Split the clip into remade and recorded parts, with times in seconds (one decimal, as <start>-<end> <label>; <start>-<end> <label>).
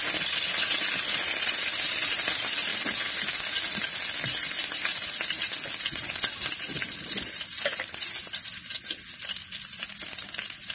0.0-10.7 recorded